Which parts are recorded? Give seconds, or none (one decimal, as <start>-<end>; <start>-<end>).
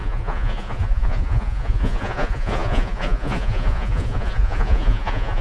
none